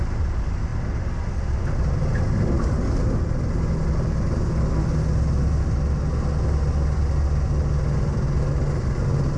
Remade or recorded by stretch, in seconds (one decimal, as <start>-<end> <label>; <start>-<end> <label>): 0.0-9.4 recorded